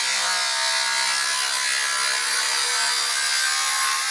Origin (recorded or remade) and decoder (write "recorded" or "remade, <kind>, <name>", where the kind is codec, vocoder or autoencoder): recorded